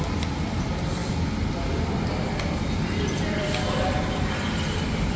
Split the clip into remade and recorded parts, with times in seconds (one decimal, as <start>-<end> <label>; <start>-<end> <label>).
0.0-5.2 recorded